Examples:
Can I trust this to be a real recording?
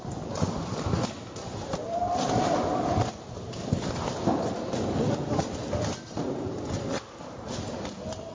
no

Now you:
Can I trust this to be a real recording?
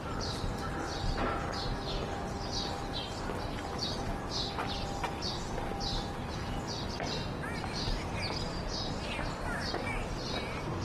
yes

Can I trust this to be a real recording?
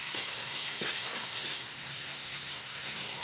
no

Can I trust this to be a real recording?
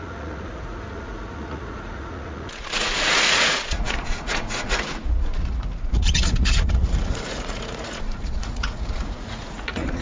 no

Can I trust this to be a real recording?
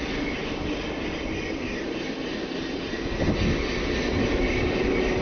yes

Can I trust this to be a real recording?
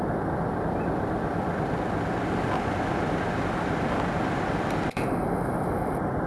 yes